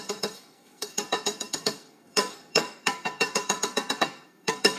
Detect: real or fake fake